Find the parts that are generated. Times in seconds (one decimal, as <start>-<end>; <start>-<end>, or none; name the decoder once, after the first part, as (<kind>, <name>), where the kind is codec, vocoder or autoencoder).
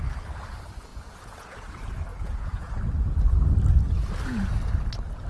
0.9-1.7 (vocoder, Vocos); 2.1-2.7